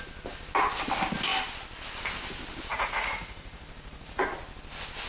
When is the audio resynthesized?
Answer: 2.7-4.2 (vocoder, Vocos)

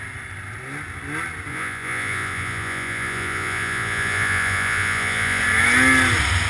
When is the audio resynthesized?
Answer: 1.5-5.4 (vocoder, Vocos)

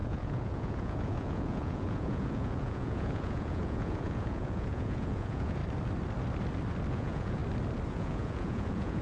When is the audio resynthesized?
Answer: 0.0-5.6 (vocoder, Vocos); 6.9-7.4; 7.9-9.0

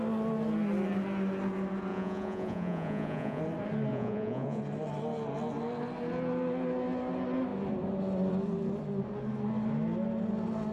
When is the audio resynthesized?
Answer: 1.9-3.4 (vocoder, Vocos); 3.9-4.6

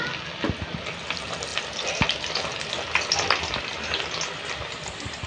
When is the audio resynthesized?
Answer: none

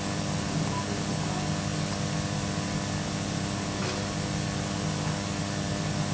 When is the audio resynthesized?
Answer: none